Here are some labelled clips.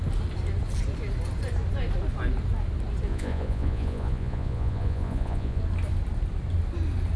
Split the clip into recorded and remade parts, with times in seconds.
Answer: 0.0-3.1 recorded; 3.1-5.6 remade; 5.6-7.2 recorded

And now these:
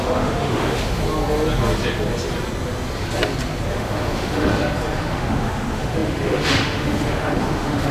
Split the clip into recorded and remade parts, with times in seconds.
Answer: 0.0-1.0 remade; 1.0-3.7 recorded; 3.7-4.5 remade; 4.5-5.0 recorded; 5.0-7.9 remade

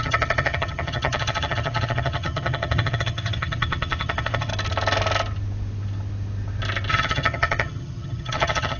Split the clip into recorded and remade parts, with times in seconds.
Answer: 0.0-4.5 remade; 4.5-6.9 recorded; 6.9-8.8 remade

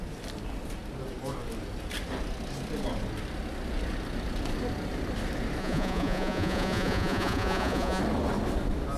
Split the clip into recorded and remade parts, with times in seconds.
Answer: 0.0-5.6 recorded; 5.6-8.0 remade; 8.0-9.0 recorded

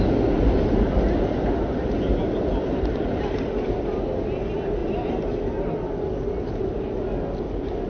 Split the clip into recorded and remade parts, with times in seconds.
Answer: 0.0-7.9 recorded

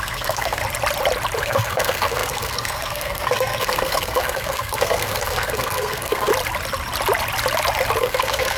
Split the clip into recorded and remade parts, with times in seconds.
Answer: 0.0-0.6 remade; 0.6-1.4 recorded; 1.4-6.3 remade; 6.3-8.0 recorded; 8.0-8.6 remade